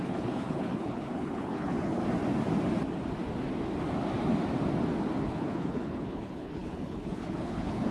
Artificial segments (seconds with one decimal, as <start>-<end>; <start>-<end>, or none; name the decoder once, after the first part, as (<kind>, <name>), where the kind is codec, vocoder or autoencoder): 0.0-2.0 (codec, HILCodec); 5.2-7.9